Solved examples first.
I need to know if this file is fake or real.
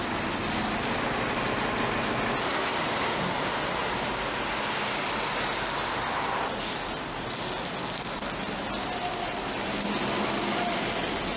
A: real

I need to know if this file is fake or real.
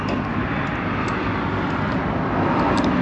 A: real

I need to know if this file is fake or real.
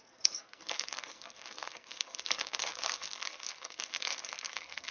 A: fake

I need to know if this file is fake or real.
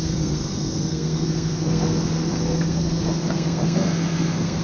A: fake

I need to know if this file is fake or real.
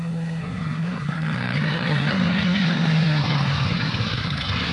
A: fake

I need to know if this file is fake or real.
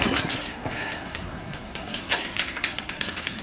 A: fake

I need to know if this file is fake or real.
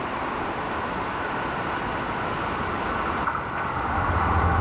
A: real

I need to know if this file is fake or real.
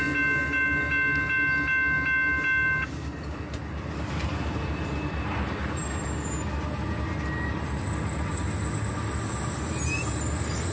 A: real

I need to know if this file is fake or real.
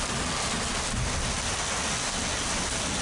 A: real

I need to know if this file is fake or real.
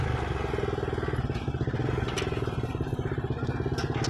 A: real